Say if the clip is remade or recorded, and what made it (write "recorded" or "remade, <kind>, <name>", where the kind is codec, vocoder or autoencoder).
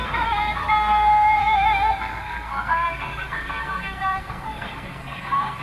remade, codec, SNAC